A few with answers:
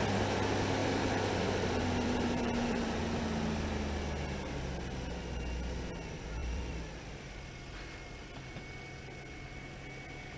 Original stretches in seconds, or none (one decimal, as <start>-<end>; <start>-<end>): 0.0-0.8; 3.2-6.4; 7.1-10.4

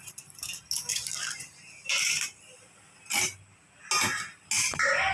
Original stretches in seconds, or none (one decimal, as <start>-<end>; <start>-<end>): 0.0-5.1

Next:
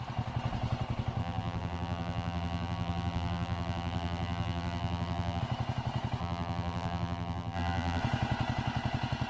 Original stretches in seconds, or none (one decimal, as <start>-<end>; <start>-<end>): 0.0-1.2; 5.4-6.2; 8.0-9.3

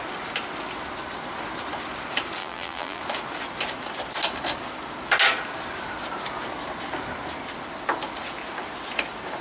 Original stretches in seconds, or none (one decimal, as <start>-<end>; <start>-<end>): 0.0-2.4; 3.0-9.4

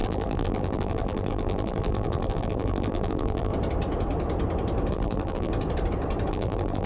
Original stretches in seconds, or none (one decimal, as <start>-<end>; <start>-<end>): 3.5-4.9; 5.5-6.3

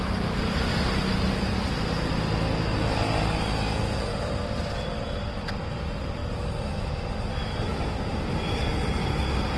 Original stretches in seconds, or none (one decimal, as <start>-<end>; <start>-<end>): 0.0-4.1; 4.9-6.2; 6.9-9.6